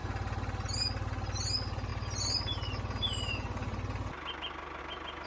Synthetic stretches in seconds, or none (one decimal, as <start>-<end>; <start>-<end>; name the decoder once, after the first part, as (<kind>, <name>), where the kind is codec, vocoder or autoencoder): none

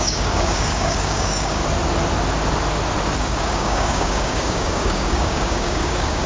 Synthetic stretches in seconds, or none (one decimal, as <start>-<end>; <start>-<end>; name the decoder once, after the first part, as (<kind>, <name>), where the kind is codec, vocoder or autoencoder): 0.0-1.6 (codec, DAC); 3.2-6.3

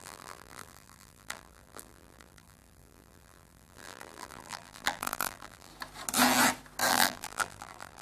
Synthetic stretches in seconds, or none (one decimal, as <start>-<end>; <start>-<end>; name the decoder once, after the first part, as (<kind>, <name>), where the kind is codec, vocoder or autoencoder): 0.0-5.7 (vocoder, BigVGAN v2); 6.9-8.0

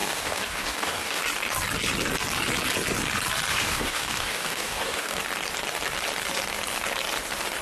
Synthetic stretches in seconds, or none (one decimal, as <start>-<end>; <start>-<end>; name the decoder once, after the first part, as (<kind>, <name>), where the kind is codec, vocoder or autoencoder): 0.0-1.2 (codec, DAC); 3.5-5.2

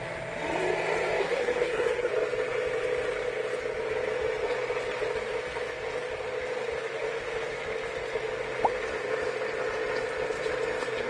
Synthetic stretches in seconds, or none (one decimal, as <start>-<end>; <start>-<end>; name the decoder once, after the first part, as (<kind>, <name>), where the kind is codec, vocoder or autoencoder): 1.2-2.1 (codec, SNAC)

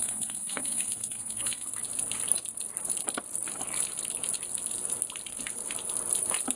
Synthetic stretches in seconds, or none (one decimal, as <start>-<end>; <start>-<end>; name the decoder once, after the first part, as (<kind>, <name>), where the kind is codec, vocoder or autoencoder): 0.0-1.7 (codec, SNAC)